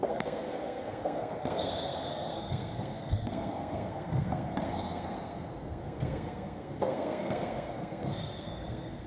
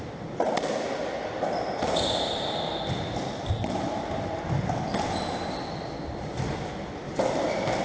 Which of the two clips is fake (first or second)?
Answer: first